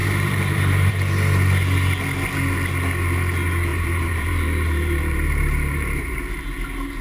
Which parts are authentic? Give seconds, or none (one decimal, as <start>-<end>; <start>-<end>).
0.9-3.7; 6.4-7.0